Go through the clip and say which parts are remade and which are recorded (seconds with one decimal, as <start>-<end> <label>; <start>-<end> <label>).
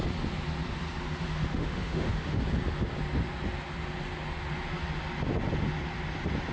0.0-1.5 recorded; 1.5-2.4 remade; 2.4-6.5 recorded